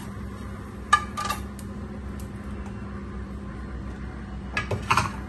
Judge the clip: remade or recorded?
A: recorded